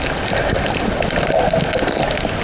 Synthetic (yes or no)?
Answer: no